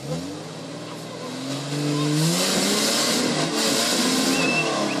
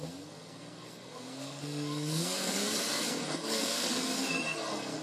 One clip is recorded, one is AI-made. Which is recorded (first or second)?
first